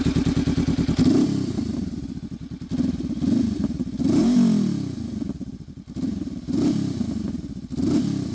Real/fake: real